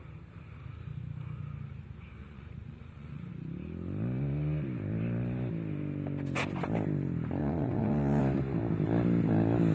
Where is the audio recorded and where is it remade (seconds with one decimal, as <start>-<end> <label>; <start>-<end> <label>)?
0.0-2.2 recorded; 2.2-3.3 remade; 3.3-7.4 recorded; 7.4-8.2 remade; 8.2-9.7 recorded